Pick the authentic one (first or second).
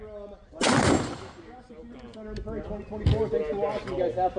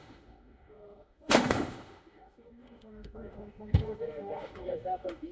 first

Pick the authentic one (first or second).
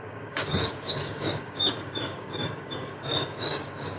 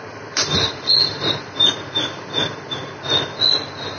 second